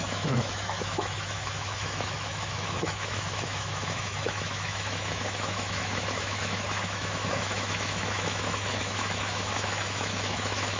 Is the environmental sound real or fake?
fake